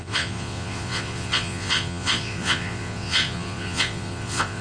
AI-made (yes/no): yes